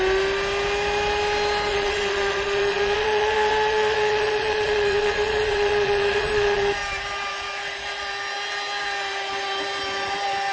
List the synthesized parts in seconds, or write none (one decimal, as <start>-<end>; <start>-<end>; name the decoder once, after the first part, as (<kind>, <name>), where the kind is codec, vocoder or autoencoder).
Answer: 1.7-6.7 (vocoder, Vocos)